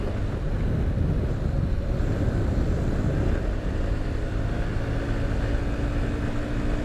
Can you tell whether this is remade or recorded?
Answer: recorded